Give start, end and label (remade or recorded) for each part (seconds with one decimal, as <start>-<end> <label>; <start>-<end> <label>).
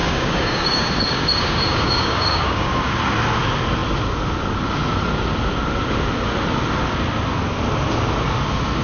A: 0.0-2.7 remade; 2.7-8.8 recorded